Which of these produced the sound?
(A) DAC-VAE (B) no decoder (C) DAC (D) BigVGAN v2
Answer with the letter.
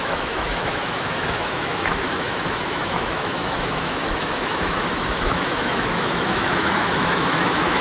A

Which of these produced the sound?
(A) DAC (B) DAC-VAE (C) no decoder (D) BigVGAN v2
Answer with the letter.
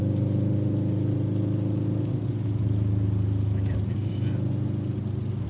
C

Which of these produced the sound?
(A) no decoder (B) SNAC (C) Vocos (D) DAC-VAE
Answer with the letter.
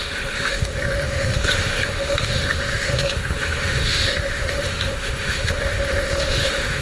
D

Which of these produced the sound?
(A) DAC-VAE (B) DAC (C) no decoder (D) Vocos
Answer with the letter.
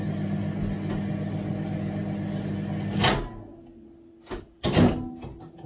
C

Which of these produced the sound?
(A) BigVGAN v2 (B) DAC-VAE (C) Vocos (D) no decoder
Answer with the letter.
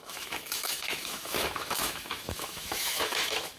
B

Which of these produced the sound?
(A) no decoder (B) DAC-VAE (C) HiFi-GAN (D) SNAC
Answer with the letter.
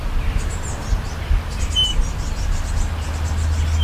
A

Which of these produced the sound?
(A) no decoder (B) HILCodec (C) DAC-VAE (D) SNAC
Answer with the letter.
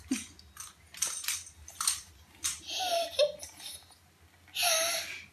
A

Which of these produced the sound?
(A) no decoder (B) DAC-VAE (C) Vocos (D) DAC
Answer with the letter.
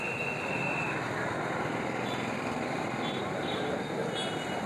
A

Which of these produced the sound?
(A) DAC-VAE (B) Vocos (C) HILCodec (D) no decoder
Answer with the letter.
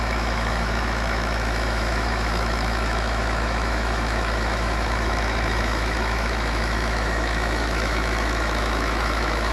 A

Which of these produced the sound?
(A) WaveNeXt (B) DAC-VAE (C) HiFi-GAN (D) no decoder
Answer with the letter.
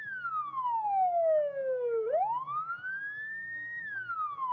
D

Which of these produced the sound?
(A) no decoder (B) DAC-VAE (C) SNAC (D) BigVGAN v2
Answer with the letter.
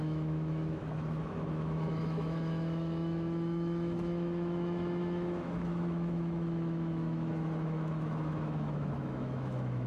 B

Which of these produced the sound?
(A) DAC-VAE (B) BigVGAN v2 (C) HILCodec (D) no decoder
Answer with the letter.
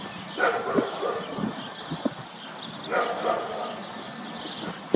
D